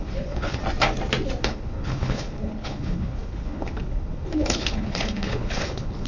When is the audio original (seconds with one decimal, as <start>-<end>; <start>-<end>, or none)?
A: 0.6-1.4